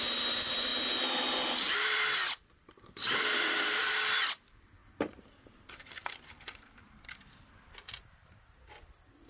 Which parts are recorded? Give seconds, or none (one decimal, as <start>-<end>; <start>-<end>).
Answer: 0.7-1.8